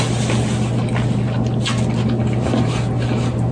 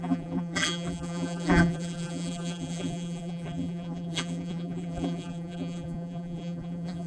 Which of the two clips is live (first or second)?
first